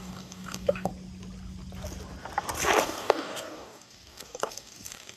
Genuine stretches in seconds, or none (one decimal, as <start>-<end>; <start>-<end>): 0.9-2.8